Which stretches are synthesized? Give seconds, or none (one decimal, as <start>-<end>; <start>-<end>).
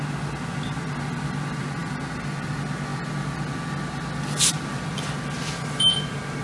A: none